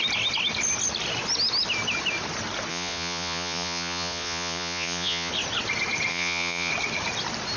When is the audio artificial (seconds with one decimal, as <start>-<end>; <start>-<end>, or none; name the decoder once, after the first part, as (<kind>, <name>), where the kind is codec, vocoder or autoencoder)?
2.7-5.3 (vocoder, Vocos); 6.1-6.7